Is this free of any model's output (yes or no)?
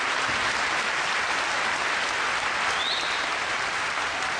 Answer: yes